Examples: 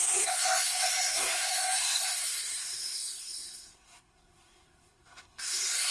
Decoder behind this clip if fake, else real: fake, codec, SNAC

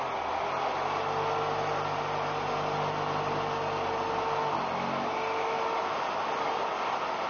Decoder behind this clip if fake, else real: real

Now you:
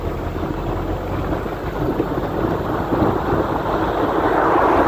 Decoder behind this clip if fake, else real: real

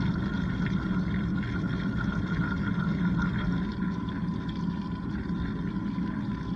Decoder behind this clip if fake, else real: real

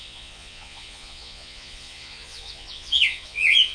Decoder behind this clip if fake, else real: fake, vocoder, Vocos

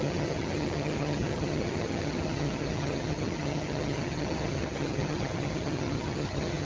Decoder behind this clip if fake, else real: fake, vocoder, HiFi-GAN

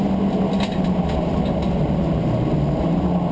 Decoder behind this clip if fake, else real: real